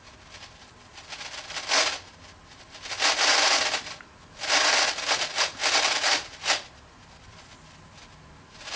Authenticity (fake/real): real